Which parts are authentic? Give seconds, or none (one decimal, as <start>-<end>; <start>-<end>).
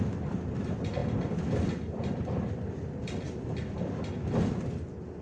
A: 0.0-1.0; 4.1-5.2